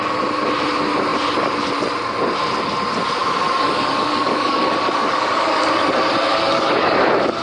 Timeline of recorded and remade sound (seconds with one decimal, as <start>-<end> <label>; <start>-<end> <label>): 0.0-3.2 recorded; 3.2-5.6 remade; 5.6-6.3 recorded; 6.3-7.0 remade; 7.0-7.4 recorded